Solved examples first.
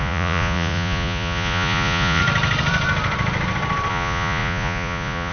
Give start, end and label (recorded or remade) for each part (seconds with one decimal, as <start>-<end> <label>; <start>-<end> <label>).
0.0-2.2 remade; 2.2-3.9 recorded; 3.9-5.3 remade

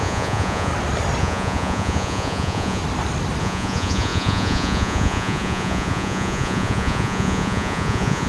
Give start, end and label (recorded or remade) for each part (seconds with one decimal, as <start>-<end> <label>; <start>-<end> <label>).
0.0-0.7 remade; 0.7-1.2 recorded; 1.2-2.8 remade; 2.8-3.4 recorded; 3.4-8.3 remade

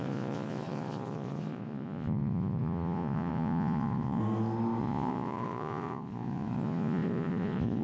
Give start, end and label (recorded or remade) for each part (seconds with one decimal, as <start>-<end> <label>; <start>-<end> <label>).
0.0-4.2 remade; 4.2-4.8 recorded; 4.8-7.8 remade